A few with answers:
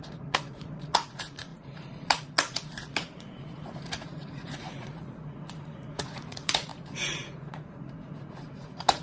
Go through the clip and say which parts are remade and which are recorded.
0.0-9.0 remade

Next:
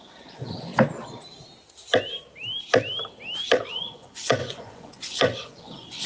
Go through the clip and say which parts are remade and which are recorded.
0.0-0.7 remade; 0.7-3.7 recorded; 3.7-6.1 remade